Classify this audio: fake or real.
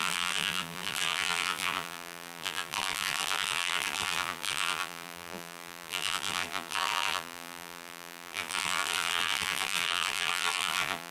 fake